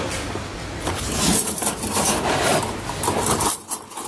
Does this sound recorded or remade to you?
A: recorded